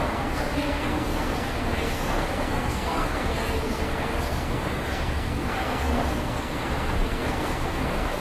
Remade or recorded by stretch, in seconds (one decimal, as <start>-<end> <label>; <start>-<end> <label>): 0.0-8.2 remade